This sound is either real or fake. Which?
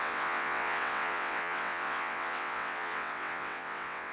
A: fake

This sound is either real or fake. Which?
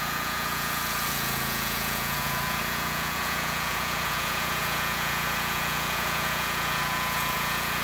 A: fake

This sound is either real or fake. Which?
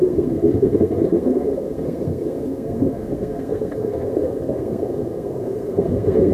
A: fake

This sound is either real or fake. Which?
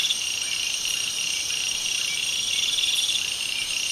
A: fake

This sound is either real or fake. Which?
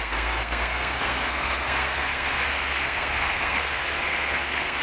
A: fake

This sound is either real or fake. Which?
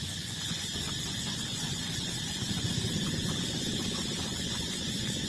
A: fake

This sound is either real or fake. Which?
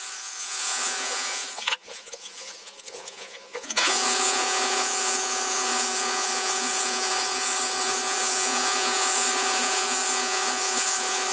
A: fake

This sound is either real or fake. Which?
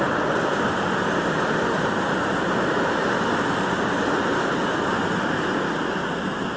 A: real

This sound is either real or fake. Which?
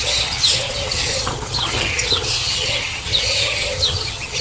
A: fake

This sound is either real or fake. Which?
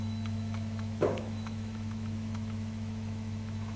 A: fake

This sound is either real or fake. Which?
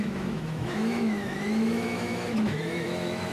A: fake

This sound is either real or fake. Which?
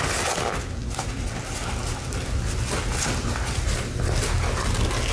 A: real